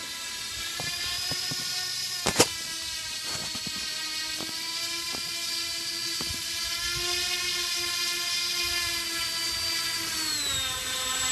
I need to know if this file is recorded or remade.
recorded